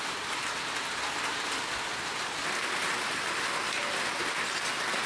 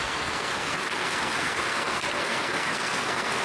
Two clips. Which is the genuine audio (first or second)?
first